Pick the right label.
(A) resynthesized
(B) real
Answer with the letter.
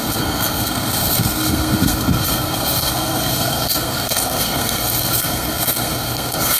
A